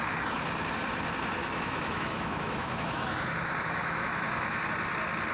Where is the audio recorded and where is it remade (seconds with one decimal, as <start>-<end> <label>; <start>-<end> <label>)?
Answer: 0.0-1.4 recorded; 1.4-4.6 remade; 4.6-5.3 recorded